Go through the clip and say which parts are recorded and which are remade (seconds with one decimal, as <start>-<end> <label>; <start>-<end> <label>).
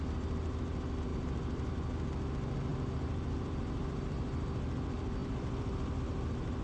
0.0-1.1 recorded; 1.1-1.7 remade; 1.7-2.7 recorded; 2.7-4.6 remade; 4.6-5.2 recorded; 5.2-6.0 remade; 6.0-6.6 recorded